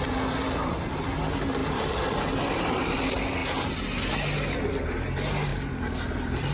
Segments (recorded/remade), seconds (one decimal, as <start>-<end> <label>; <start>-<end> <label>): 0.0-5.5 recorded; 5.5-6.5 remade